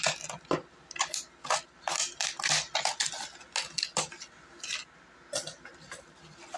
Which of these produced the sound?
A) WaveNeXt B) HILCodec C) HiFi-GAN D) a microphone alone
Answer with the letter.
D